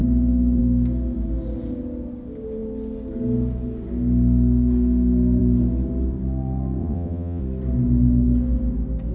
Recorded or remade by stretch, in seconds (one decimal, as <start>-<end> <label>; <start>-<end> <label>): 0.0-6.8 recorded; 6.8-7.4 remade; 7.4-9.1 recorded